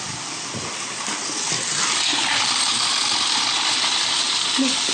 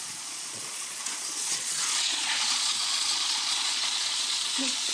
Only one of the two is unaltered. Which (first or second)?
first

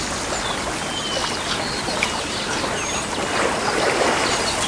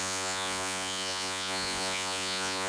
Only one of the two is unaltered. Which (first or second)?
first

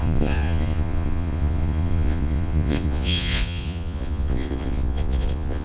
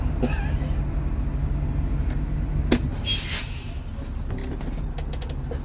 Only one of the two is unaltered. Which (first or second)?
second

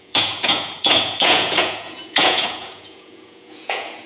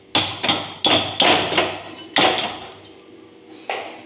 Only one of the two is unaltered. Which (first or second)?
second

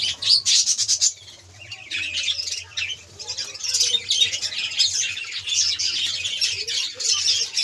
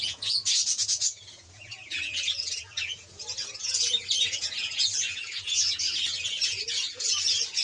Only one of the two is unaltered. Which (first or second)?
first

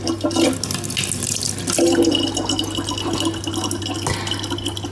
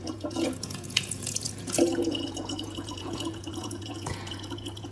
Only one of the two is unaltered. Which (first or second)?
first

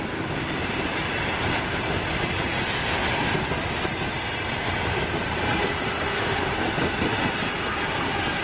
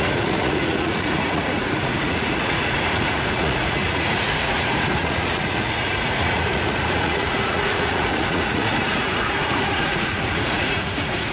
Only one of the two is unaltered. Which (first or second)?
first